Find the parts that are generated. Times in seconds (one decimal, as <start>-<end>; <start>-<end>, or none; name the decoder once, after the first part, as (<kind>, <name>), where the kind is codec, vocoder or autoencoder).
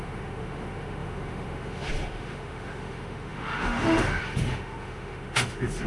0.0-5.9 (autoencoder, DAC-VAE)